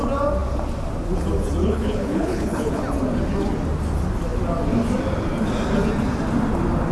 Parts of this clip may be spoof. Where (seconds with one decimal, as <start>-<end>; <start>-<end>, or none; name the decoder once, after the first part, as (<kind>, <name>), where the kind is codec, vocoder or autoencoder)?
1.6-2.8 (codec, HILCodec)